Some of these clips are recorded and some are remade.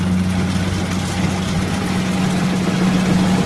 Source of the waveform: recorded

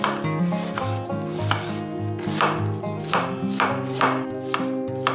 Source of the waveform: recorded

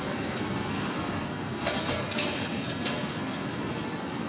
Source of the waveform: remade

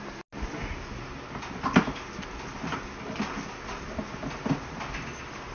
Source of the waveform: recorded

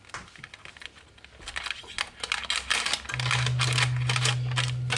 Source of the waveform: recorded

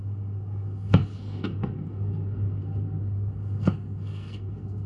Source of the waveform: remade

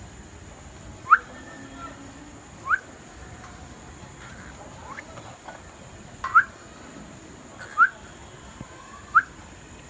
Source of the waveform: recorded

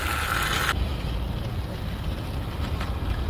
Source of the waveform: recorded